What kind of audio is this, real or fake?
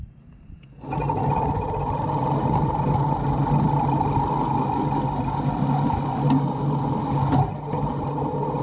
real